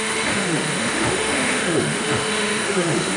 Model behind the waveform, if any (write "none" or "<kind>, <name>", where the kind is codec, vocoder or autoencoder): autoencoder, DAC-VAE